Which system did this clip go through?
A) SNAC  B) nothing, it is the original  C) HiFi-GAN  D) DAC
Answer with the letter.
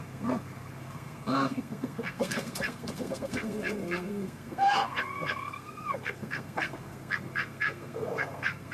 A